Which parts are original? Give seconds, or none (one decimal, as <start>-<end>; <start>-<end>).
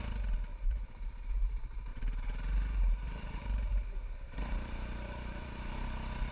0.0-0.5; 1.3-1.9; 5.7-6.3